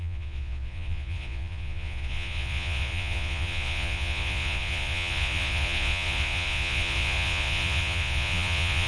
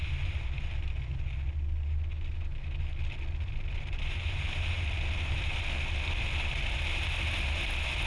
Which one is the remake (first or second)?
first